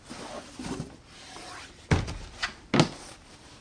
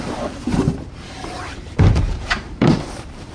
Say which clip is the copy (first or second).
second